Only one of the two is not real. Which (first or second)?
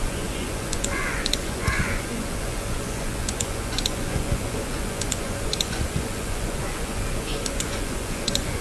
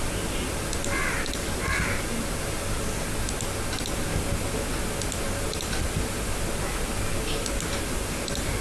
first